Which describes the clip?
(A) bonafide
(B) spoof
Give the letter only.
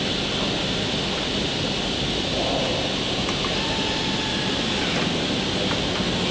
A